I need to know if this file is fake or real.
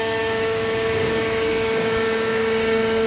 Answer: fake